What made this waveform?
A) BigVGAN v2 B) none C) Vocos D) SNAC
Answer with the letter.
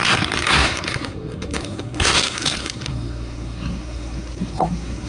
D